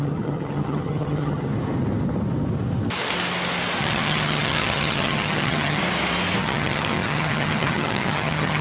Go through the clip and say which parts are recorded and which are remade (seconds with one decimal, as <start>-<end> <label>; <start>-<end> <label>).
0.0-1.5 remade; 1.5-3.8 recorded; 3.8-5.8 remade; 5.8-6.4 recorded; 6.4-8.6 remade